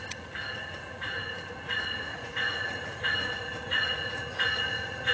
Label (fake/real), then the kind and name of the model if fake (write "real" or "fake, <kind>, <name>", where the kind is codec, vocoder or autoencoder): fake, vocoder, Vocos